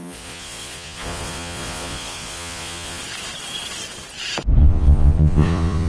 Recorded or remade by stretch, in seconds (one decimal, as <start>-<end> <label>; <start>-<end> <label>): 0.0-3.0 remade; 3.0-4.6 recorded; 4.6-5.9 remade